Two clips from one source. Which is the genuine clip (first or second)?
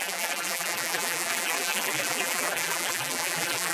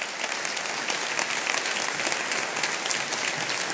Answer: second